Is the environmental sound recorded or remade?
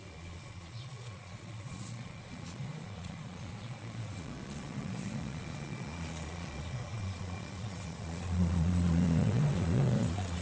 remade